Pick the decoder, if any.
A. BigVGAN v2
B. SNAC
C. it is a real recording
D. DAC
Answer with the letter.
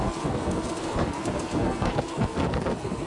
B